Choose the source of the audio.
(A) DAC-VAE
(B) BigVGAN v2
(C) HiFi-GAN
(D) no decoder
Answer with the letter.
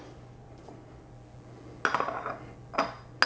D